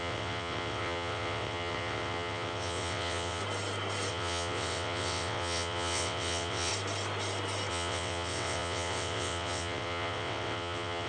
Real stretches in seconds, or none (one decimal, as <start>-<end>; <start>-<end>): 3.4-4.1; 6.7-7.7